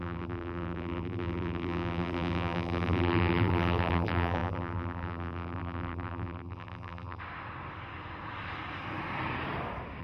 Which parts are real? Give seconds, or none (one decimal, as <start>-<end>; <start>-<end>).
7.2-10.0